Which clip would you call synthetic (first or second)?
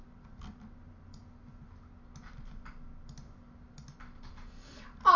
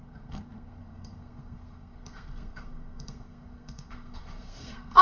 second